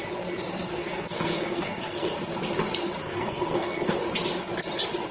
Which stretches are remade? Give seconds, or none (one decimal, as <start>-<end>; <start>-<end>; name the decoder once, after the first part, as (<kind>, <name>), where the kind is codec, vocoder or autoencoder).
0.7-2.2 (codec, SNAC); 3.0-4.0